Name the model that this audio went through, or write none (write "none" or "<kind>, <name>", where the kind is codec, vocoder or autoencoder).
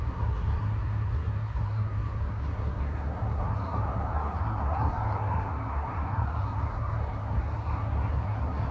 codec, SNAC